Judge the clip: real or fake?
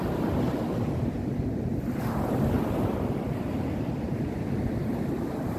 real